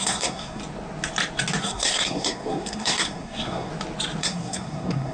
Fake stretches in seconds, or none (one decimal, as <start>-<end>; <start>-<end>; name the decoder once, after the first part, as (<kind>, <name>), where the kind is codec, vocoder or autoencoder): 0.0-0.6 (codec, SNAC); 1.6-3.7; 4.2-5.1